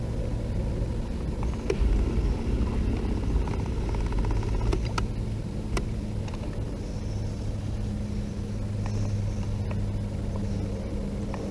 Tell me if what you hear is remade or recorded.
recorded